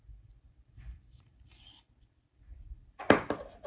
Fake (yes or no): no